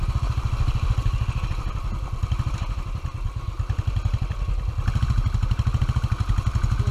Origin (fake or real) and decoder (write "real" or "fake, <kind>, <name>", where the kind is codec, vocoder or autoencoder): real